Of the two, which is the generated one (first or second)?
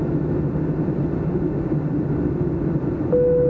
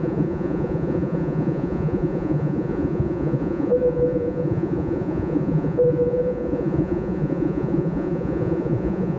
second